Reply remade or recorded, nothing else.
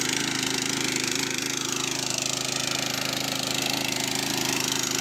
recorded